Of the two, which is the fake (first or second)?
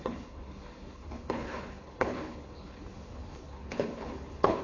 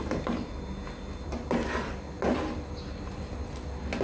first